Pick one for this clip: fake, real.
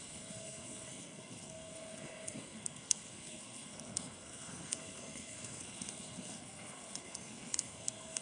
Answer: fake